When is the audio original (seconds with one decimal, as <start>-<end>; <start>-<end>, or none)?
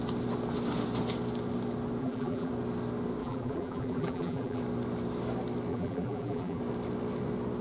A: 0.0-2.0; 2.5-3.2; 4.6-5.7; 6.6-7.6